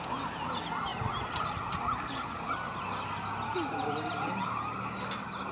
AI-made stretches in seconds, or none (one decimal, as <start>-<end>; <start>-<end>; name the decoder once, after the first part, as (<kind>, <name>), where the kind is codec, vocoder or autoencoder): none